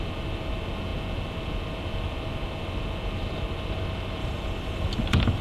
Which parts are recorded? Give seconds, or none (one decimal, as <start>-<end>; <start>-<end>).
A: 0.0-4.2